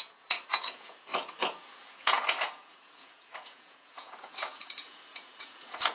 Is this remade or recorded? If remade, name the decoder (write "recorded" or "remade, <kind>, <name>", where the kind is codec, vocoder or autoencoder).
remade, vocoder, Vocos